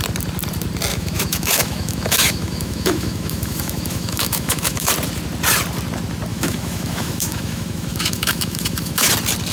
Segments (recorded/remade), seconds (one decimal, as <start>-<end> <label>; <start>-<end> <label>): 0.0-0.9 recorded; 0.9-4.9 remade; 4.9-6.3 recorded; 6.3-9.1 remade; 9.1-9.5 recorded